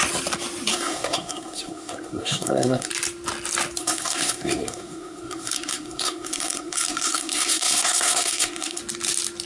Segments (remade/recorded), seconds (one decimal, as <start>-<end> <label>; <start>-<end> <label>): 0.0-0.7 recorded; 0.7-2.9 remade; 2.9-3.8 recorded; 3.8-8.8 remade; 8.8-9.5 recorded